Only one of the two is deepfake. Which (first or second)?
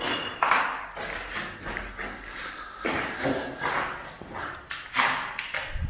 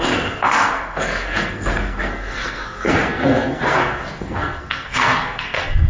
second